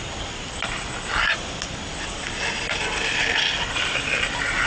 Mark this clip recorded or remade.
recorded